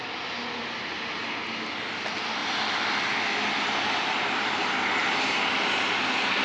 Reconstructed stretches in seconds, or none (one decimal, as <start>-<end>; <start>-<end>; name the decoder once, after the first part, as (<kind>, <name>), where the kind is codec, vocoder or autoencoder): none

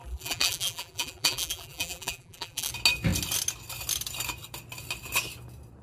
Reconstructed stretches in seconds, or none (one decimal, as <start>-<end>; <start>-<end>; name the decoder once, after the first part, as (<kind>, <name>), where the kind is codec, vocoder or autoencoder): 0.0-2.7 (vocoder, BigVGAN v2)

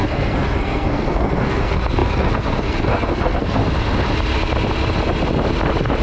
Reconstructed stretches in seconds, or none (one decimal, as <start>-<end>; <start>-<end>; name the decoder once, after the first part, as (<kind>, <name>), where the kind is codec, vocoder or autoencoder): 0.0-3.6 (codec, SNAC)

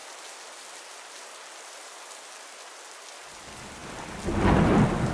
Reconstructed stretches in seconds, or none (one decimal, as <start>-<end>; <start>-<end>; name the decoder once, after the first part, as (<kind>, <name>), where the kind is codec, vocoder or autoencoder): none